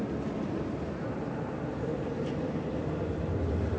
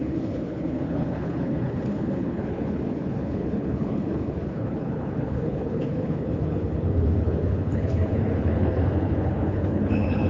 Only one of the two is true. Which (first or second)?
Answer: first